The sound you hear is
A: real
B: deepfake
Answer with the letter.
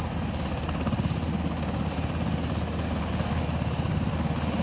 A